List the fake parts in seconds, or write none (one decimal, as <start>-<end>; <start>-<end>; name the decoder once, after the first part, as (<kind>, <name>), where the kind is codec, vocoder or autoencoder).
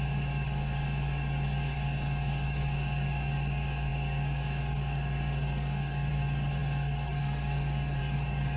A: 0.0-8.6 (codec, DAC)